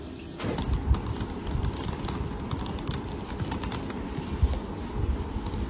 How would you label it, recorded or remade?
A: recorded